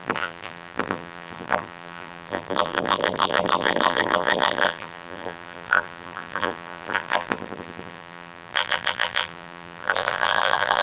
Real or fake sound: fake